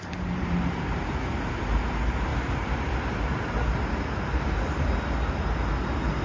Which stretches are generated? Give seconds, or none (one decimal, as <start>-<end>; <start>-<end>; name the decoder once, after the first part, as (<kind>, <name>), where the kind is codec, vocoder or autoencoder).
0.0-2.3 (vocoder, BigVGAN v2)